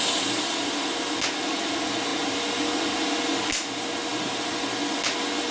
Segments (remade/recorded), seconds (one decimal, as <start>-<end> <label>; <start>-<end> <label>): 0.0-5.5 recorded